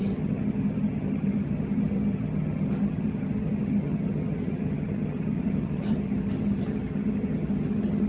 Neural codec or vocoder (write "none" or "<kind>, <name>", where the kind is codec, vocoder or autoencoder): vocoder, HiFi-GAN